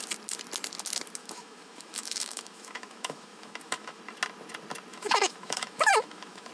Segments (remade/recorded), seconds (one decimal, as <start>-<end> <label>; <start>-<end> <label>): 0.0-1.2 recorded; 1.2-4.0 remade; 4.0-4.9 recorded; 4.9-6.5 remade